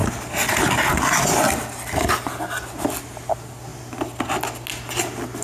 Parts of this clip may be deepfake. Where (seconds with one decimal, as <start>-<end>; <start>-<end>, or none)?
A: none